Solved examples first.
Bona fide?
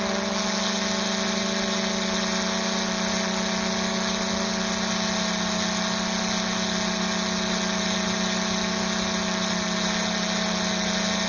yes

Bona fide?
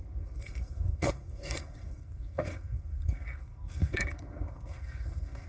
no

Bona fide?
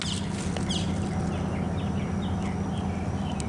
yes